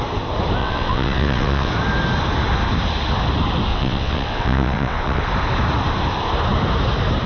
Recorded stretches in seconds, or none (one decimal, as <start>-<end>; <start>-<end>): 0.0-0.6; 1.7-3.7; 5.2-7.3